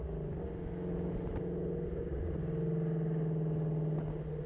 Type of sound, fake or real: real